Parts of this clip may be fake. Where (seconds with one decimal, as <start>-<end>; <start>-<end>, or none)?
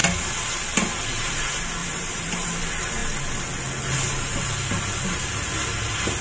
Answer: 1.8-2.6